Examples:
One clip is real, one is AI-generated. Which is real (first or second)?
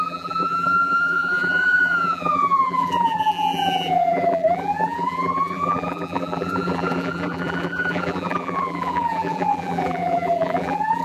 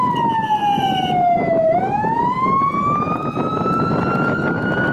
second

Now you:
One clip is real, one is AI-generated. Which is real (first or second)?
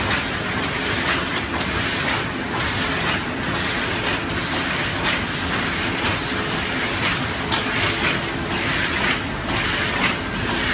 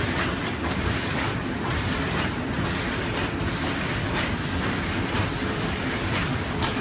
first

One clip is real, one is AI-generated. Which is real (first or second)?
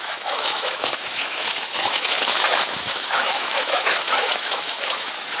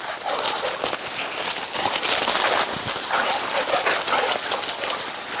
second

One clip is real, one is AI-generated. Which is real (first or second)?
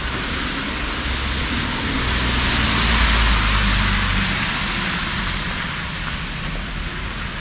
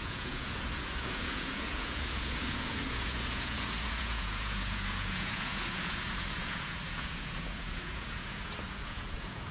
first